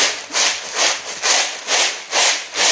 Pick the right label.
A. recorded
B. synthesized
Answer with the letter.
A